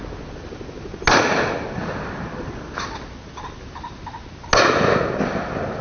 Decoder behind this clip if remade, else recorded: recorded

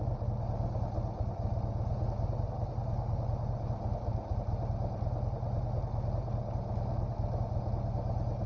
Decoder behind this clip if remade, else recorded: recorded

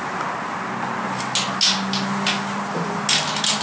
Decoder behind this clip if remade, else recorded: recorded